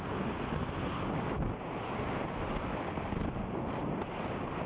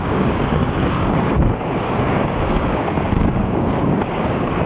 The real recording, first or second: first